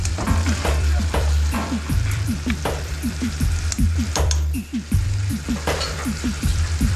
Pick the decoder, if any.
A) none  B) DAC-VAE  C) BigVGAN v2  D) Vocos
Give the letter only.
C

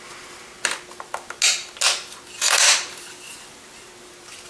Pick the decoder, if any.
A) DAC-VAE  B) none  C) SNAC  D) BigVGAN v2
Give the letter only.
B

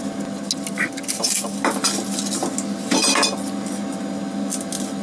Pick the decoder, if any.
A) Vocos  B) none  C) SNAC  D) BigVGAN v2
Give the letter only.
B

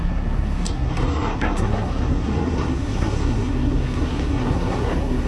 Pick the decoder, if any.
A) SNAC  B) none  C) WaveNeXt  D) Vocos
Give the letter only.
A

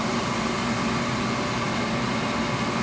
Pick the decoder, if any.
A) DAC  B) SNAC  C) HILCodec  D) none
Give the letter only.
D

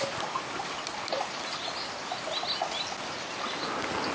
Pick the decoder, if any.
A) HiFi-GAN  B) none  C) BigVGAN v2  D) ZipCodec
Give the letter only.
B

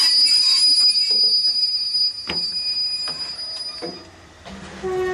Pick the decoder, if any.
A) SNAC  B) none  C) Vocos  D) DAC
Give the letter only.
B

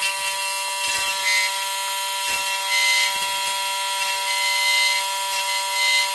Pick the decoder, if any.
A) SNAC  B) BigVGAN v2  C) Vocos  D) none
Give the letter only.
D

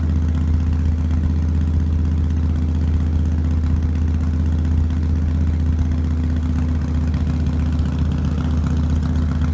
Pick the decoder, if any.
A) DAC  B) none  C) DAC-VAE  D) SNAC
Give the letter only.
B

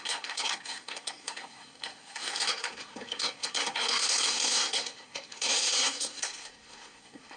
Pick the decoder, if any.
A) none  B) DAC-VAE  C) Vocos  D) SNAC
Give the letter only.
D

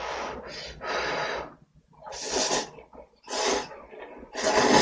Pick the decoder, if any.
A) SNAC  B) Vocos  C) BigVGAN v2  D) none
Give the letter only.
D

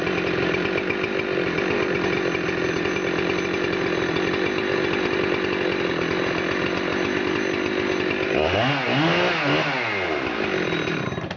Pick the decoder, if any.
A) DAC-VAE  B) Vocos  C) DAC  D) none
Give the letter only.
D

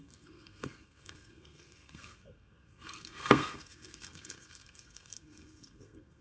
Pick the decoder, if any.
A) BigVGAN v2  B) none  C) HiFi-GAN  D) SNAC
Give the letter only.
D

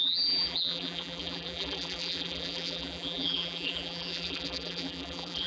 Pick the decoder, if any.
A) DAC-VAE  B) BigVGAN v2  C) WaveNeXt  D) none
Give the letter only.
B